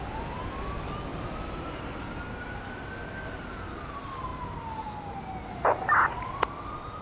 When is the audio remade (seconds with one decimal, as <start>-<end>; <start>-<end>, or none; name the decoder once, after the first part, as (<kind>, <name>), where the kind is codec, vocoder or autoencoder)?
none